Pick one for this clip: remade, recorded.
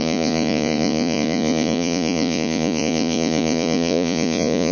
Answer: remade